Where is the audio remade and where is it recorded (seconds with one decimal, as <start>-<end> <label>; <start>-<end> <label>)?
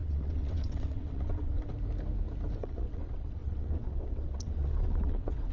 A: 0.0-1.7 remade; 1.7-2.6 recorded; 2.6-5.5 remade